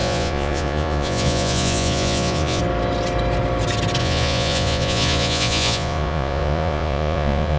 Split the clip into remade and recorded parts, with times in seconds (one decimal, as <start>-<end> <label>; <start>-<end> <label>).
0.0-2.6 remade; 2.6-4.0 recorded; 4.0-7.6 remade